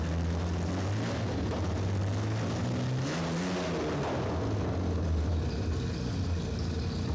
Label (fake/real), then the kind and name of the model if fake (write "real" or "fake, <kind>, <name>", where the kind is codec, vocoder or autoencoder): real